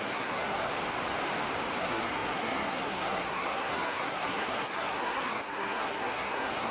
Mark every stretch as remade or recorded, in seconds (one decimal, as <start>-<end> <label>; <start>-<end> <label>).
0.0-0.7 remade; 0.7-1.8 recorded; 1.8-6.7 remade